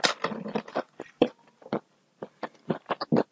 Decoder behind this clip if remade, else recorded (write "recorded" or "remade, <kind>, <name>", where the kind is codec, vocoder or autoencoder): recorded